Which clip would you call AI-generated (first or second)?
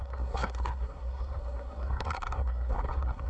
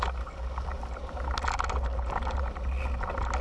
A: first